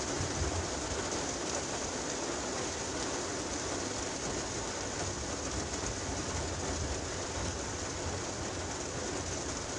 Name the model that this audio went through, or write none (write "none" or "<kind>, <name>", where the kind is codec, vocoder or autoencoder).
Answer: vocoder, BigVGAN v2